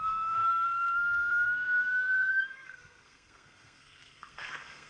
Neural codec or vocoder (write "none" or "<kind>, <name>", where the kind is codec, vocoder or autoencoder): codec, SNAC